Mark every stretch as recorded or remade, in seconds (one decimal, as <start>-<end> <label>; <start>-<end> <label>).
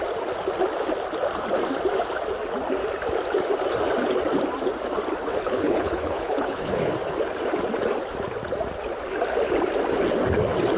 0.0-5.3 recorded; 5.3-6.9 remade; 6.9-10.8 recorded